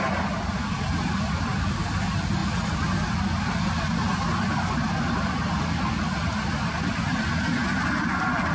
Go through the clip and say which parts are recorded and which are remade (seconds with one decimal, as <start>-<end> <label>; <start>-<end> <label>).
0.0-8.5 recorded